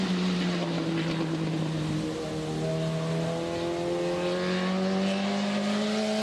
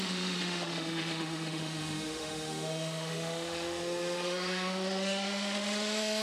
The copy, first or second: second